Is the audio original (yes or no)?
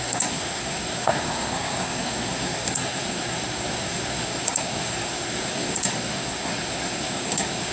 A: no